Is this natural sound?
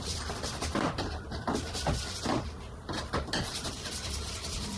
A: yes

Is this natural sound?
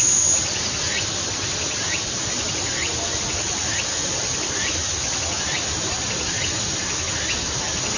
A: yes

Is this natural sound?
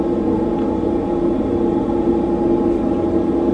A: yes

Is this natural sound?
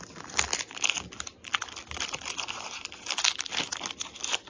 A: yes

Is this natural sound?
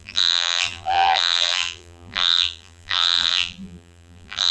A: no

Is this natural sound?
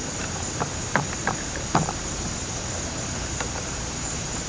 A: no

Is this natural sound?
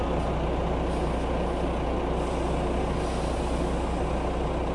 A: yes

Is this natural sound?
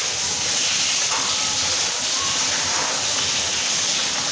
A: yes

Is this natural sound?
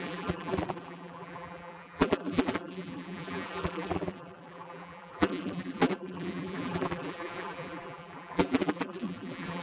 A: no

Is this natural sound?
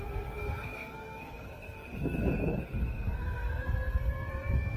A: no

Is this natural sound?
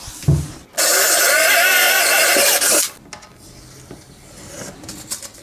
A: yes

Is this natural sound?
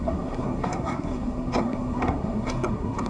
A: no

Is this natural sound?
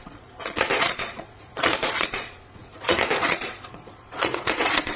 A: no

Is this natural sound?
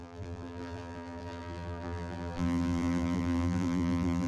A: no